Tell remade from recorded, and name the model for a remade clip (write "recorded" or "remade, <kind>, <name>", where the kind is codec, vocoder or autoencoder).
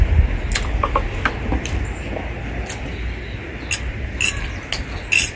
recorded